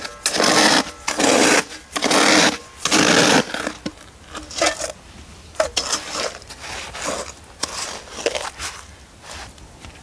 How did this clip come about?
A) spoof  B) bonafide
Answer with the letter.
B